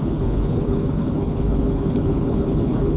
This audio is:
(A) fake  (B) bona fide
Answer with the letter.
A